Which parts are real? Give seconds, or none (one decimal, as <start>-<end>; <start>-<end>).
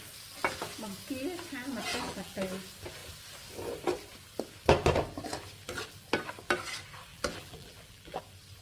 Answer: 0.0-1.9; 2.4-7.1; 8.2-8.6